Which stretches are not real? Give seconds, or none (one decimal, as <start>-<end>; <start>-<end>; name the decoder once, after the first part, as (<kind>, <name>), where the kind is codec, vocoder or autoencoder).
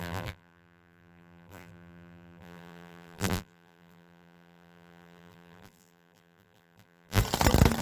0.0-7.2 (vocoder, BigVGAN v2)